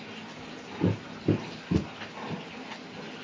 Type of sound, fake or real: real